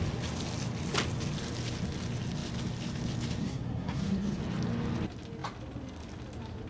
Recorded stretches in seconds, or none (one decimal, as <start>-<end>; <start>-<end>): 0.0-3.4; 4.4-6.7